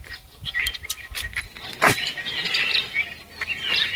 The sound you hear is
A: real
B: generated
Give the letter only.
B